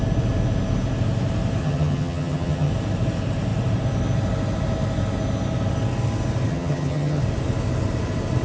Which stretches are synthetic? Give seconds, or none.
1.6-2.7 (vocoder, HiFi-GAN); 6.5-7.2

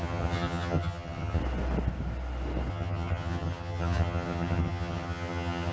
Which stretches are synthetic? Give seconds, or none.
0.0-1.4 (vocoder, HiFi-GAN); 2.7-5.7

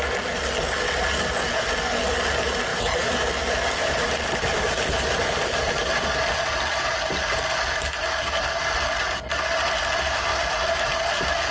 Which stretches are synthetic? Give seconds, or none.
none

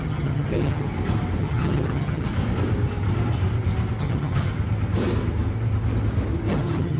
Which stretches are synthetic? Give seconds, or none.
0.0-0.9 (vocoder, HiFi-GAN); 1.4-2.3; 4.0-4.5; 6.5-7.0

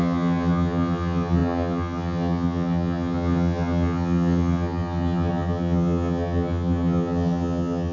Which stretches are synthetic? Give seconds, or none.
0.0-7.9 (vocoder, HiFi-GAN)